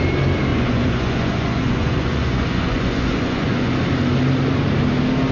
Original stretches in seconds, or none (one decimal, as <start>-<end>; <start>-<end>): 0.0-0.5; 3.7-5.3